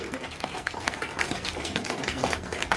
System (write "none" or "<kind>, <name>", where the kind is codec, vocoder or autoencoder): codec, SNAC